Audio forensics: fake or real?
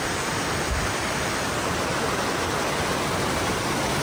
real